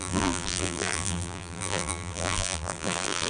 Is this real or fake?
fake